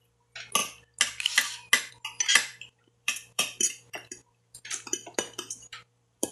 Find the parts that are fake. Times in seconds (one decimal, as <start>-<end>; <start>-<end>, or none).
2.3-6.3